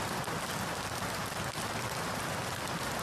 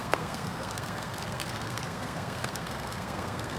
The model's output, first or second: second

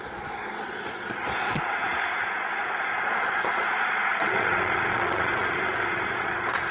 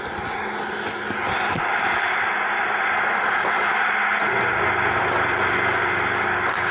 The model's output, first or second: first